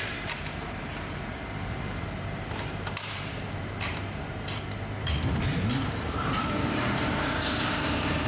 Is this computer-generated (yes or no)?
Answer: yes